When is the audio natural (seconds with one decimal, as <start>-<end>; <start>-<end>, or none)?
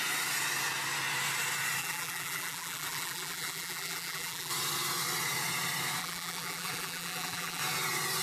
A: 0.0-1.8; 4.5-6.0; 7.6-8.2